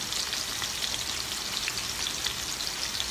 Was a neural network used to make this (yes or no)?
no